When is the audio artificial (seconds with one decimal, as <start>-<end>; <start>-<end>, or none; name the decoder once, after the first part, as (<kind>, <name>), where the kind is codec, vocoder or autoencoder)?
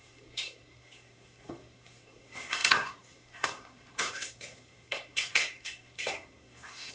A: 0.0-6.9 (codec, SNAC)